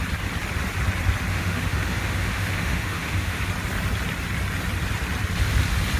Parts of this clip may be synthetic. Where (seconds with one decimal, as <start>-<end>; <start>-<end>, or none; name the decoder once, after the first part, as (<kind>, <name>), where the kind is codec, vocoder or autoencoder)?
1.3-3.4 (autoencoder, DAC-VAE)